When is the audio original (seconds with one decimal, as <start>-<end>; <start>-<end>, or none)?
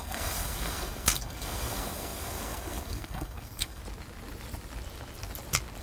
3.8-5.8